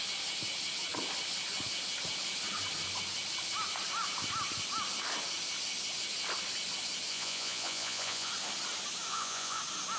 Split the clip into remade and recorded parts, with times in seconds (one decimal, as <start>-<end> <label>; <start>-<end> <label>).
0.0-7.1 recorded; 7.1-8.3 remade; 8.3-9.1 recorded; 9.1-9.6 remade; 9.6-10.0 recorded